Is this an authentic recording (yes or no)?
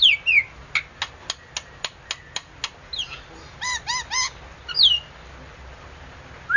yes